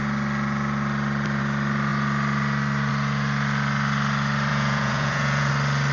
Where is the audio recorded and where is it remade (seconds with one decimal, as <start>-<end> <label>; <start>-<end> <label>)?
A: 0.0-4.5 recorded; 4.5-5.5 remade; 5.5-5.9 recorded